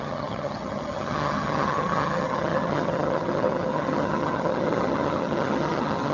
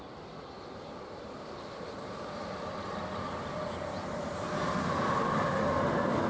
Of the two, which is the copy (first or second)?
first